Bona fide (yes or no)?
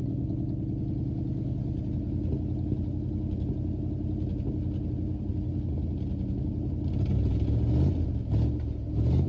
yes